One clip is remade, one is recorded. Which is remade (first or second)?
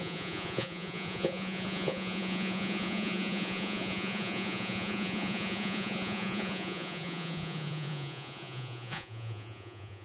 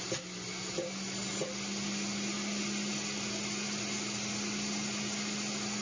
first